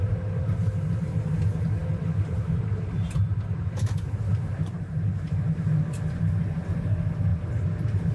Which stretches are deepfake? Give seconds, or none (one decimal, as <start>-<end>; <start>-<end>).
4.3-5.8; 7.3-8.1